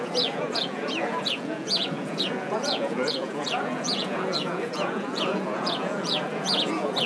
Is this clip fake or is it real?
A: fake